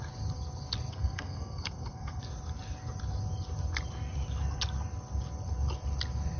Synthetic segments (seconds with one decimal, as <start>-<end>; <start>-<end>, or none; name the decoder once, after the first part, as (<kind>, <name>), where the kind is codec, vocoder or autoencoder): 0.9-2.2 (codec, SNAC)